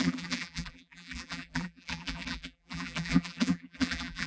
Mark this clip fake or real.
fake